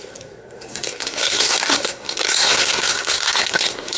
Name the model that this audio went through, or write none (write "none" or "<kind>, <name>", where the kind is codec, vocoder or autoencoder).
codec, SNAC